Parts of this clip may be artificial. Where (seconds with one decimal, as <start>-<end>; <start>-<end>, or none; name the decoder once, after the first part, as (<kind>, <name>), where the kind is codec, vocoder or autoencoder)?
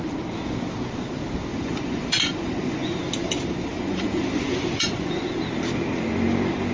1.5-3.0 (vocoder, Vocos); 3.7-5.2